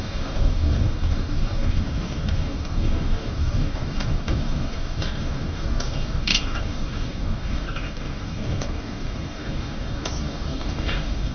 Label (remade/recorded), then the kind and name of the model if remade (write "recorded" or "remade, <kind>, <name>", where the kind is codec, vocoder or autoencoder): remade, codec, DAC